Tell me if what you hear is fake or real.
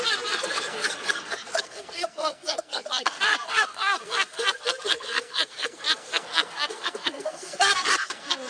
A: fake